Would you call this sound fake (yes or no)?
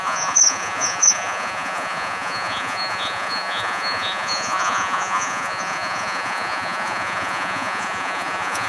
yes